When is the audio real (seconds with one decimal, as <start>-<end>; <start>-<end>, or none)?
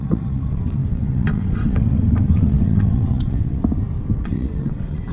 3.6-4.2